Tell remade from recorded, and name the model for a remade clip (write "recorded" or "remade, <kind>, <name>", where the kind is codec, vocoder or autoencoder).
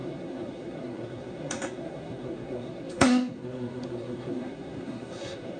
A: remade, codec, SNAC